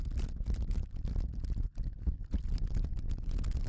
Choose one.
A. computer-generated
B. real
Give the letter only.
B